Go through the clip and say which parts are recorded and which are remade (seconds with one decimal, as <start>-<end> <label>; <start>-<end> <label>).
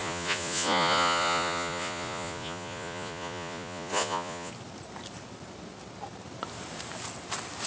0.0-4.5 remade; 4.5-7.7 recorded